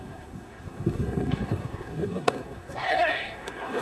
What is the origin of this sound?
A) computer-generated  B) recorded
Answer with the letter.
A